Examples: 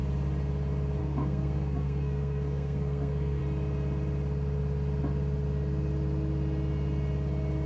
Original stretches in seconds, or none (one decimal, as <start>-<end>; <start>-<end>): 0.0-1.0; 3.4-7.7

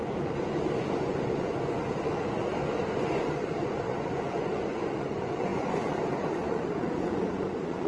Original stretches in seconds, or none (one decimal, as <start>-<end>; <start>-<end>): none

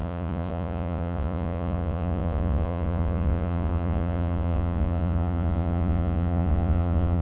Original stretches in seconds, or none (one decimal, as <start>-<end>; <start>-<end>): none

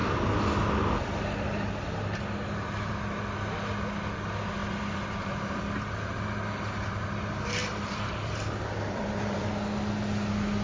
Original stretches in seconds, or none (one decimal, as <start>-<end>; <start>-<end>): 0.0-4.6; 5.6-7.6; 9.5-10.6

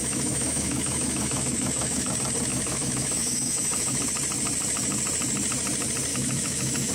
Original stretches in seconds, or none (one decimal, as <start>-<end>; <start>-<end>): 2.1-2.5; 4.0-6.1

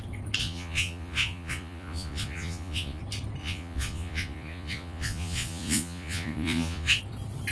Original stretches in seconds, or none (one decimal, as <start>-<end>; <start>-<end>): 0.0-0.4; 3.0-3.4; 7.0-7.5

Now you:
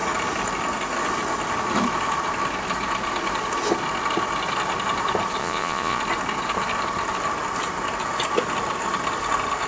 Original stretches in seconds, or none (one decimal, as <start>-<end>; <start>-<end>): 0.0-5.4; 6.0-9.7

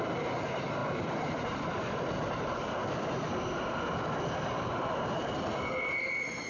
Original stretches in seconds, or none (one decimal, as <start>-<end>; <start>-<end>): 0.0-6.5